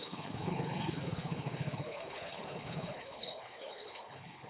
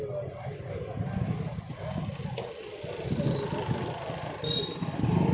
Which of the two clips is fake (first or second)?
first